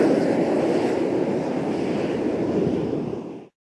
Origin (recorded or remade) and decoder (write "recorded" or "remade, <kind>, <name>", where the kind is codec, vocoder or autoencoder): recorded